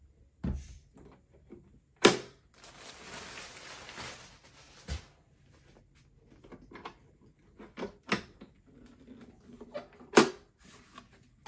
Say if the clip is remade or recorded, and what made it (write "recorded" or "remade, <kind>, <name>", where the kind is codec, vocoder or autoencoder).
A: recorded